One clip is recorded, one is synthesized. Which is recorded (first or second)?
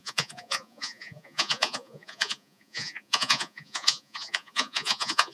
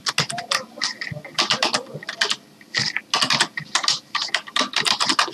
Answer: second